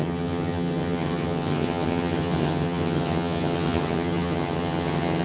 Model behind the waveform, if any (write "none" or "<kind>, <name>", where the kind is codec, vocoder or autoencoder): vocoder, HiFi-GAN